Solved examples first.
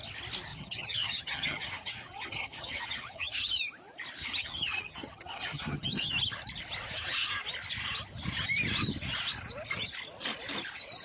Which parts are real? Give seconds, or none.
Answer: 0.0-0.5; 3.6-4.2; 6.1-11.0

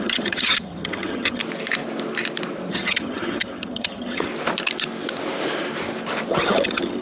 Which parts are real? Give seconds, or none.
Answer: 1.4-2.7; 4.3-6.3